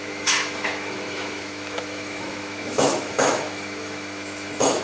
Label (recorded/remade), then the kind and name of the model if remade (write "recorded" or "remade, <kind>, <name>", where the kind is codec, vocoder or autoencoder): remade, autoencoder, DAC-VAE